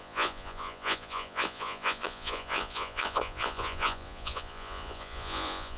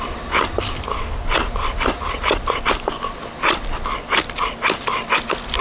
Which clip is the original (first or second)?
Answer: second